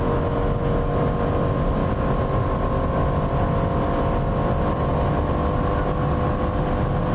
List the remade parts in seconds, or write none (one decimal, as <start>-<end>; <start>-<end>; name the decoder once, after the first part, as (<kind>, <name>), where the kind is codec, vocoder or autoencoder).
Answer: none

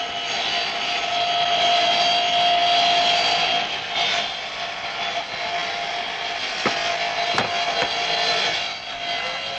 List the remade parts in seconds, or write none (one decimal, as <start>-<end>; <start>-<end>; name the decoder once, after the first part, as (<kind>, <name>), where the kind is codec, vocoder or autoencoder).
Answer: none